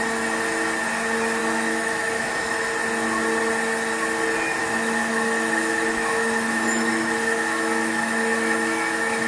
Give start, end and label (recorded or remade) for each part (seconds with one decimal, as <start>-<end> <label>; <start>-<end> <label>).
0.0-1.4 recorded; 1.4-2.6 remade; 2.6-4.6 recorded; 4.6-9.3 remade